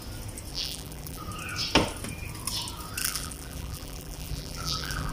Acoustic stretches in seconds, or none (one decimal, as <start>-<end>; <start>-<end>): 0.0-0.5; 1.2-3.0